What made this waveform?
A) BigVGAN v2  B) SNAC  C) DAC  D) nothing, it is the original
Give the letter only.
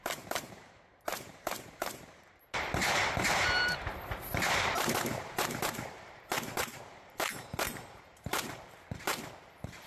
A